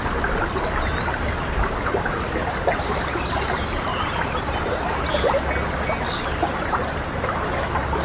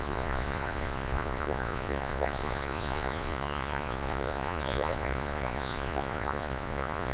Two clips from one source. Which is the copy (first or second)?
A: second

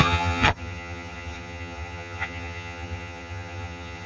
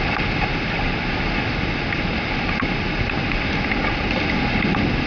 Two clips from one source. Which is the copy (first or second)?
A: first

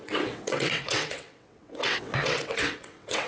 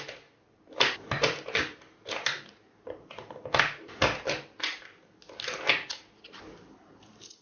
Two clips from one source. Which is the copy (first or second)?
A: first